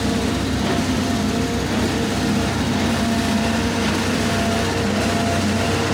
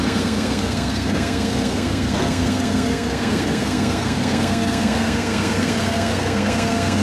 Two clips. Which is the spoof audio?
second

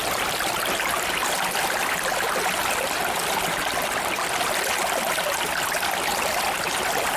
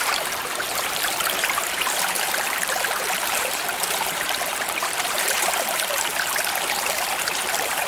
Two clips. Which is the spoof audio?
second